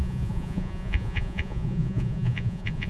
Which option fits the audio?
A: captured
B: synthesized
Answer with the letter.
B